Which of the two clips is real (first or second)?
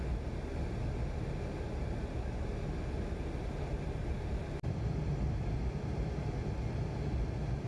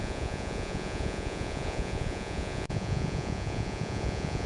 first